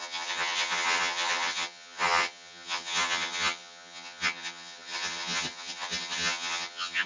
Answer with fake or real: fake